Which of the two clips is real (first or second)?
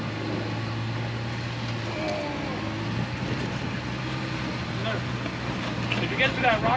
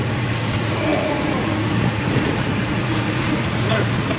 first